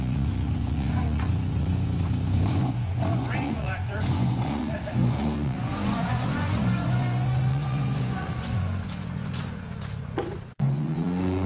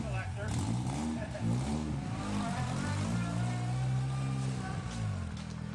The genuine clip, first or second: second